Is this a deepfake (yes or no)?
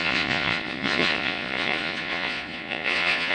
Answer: yes